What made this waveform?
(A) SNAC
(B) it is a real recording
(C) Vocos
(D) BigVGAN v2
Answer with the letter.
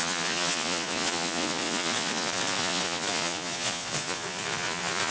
C